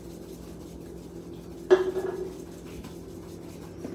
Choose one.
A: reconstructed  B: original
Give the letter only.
B